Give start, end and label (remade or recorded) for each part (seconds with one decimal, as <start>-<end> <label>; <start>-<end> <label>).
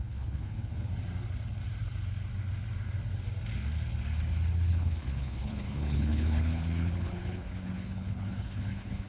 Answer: 0.0-0.9 remade; 0.9-4.7 recorded; 4.7-9.1 remade